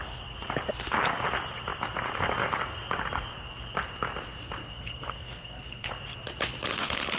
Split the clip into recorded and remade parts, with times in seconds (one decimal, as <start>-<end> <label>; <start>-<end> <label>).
0.0-4.6 recorded; 4.6-5.9 remade; 5.9-7.2 recorded